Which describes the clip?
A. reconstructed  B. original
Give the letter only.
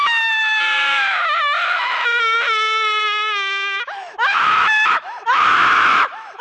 A